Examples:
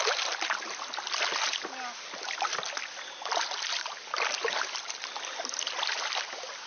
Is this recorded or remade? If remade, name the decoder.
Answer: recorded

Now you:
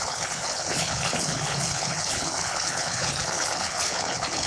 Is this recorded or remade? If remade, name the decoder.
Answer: remade, codec, HILCodec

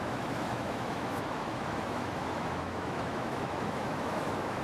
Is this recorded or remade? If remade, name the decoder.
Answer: remade, autoencoder, DAC-VAE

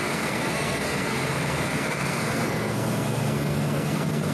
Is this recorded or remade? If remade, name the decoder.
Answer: remade, codec, SNAC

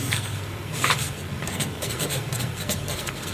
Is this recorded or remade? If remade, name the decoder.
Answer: remade, codec, SNAC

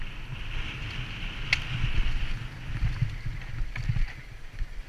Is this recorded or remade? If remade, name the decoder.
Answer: recorded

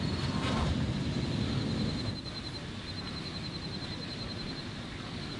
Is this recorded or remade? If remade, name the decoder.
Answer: recorded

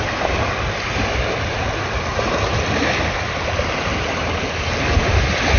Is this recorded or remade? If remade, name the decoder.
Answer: recorded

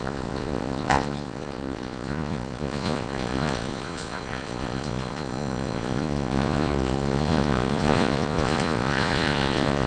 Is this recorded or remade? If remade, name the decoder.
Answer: remade, vocoder, Vocos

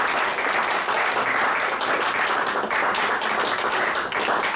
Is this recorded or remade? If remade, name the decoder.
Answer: recorded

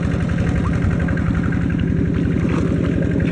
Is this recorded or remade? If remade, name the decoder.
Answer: recorded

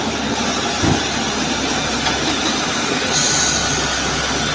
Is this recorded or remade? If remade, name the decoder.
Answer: recorded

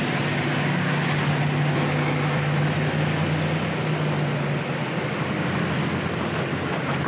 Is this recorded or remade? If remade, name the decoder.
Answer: recorded